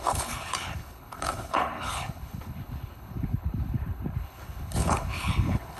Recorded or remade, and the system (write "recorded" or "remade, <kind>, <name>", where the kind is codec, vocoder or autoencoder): remade, codec, HILCodec